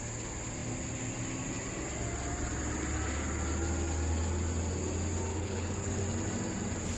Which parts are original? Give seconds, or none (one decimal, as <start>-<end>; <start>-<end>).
0.0-5.3; 6.0-7.0